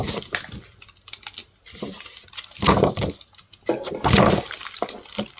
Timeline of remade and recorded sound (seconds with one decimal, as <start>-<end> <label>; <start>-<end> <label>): 0.0-5.4 recorded